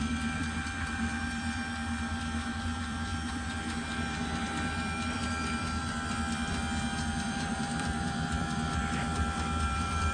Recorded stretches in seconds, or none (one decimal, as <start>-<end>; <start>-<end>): 6.6-7.1